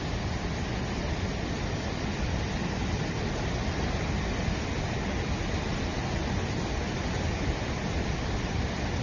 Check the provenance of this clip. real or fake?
real